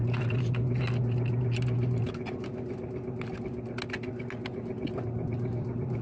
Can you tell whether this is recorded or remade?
recorded